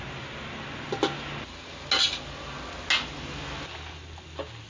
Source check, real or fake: real